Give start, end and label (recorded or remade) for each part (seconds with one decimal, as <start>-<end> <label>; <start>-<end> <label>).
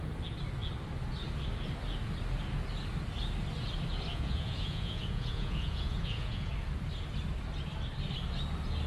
0.0-4.1 recorded; 4.1-6.5 remade; 6.5-8.9 recorded